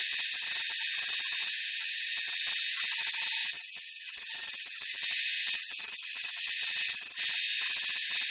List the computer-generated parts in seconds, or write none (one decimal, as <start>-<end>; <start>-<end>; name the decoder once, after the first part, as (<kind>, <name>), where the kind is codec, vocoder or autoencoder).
1.4-2.1 (vocoder, Vocos); 3.4-6.7